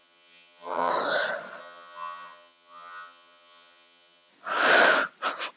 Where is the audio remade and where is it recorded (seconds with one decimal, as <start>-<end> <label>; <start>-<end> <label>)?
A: 0.0-0.9 remade; 0.9-1.6 recorded; 1.6-4.3 remade; 4.3-5.6 recorded